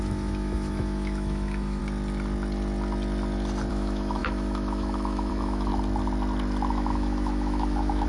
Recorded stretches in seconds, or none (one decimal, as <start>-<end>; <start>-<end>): 1.8-3.7; 5.7-6.7